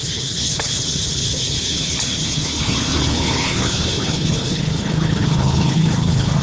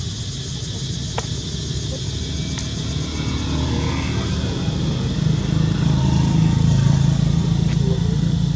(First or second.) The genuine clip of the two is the second